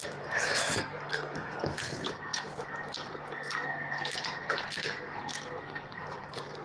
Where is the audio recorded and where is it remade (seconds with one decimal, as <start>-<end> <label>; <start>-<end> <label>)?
0.0-6.6 remade